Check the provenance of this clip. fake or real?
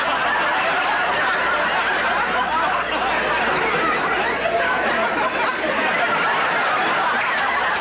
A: real